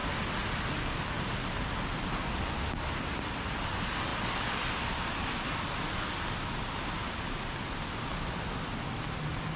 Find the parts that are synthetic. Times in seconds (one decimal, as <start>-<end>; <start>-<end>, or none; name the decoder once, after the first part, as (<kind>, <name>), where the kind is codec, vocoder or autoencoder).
none